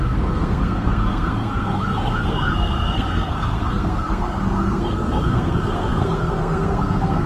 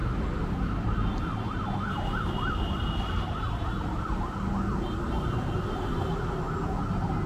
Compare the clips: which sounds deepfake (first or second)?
first